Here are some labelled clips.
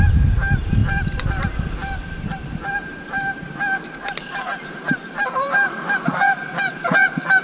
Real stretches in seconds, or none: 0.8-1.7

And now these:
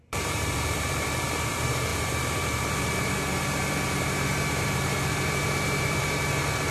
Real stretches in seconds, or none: none